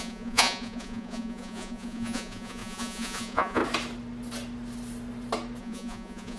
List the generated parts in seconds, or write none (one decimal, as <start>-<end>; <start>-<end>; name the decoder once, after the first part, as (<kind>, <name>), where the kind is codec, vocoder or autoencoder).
0.0-3.6 (vocoder, Vocos); 5.6-6.4